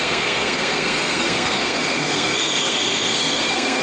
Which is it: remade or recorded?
remade